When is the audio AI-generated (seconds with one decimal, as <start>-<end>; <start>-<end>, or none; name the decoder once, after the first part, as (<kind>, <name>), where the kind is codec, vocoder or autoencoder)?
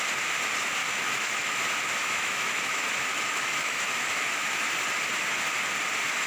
0.8-1.6 (autoencoder, DAC-VAE); 2.0-4.6